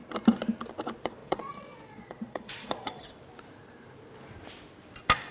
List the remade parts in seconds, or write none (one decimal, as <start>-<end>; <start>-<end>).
1.2-3.0